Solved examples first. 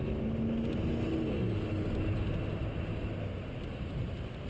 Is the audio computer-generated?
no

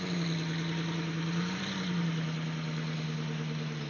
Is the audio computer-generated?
no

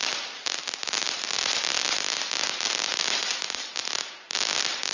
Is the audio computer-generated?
no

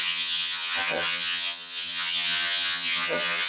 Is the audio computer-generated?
yes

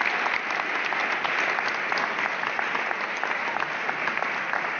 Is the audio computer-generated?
no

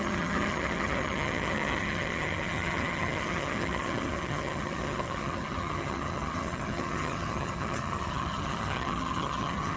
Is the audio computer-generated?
yes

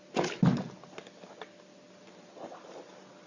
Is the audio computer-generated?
no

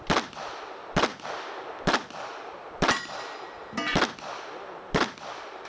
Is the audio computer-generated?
no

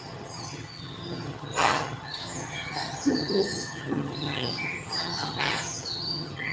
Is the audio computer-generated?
yes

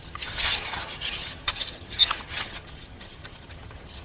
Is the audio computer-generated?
yes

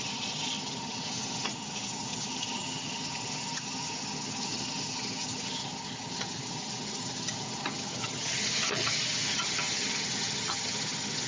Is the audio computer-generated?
yes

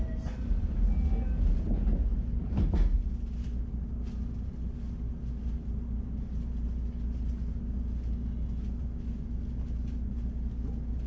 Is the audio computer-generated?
no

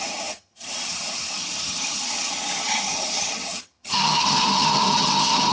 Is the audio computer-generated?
yes